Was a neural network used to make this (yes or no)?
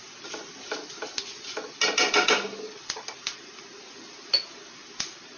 no